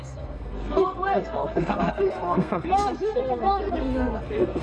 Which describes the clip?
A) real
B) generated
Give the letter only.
B